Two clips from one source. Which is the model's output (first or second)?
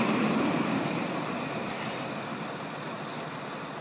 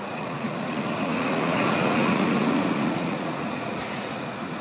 second